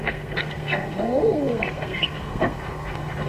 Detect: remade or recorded remade